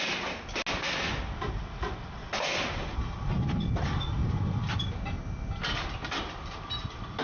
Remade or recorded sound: recorded